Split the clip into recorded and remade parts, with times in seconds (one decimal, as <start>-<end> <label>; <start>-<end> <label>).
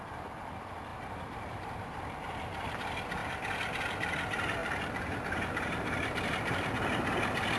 0.0-0.9 recorded; 0.9-2.7 remade; 2.7-4.6 recorded; 4.6-6.7 remade; 6.7-7.6 recorded